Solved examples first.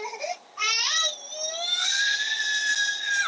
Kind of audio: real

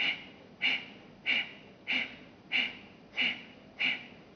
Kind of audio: real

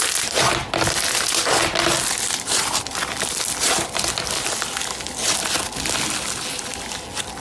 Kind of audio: real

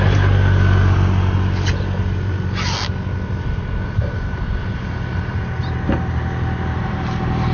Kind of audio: real